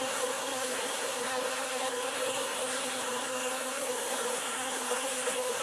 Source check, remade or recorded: remade